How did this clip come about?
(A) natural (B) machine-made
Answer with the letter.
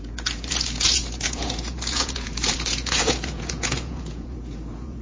B